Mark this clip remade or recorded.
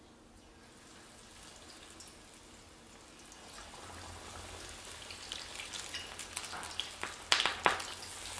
recorded